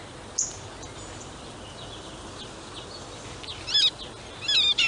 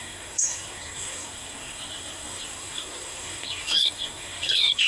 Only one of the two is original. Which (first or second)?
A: first